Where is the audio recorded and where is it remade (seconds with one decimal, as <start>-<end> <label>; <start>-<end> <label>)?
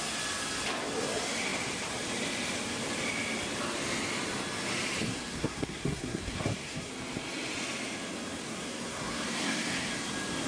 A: 0.0-5.1 recorded; 5.1-6.9 remade; 6.9-8.4 recorded; 8.4-9.9 remade; 9.9-10.5 recorded